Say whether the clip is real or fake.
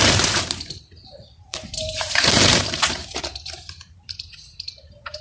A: fake